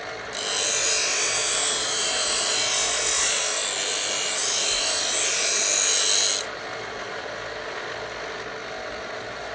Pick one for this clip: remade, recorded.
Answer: recorded